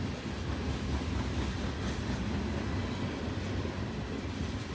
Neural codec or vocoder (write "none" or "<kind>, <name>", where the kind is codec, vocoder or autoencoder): none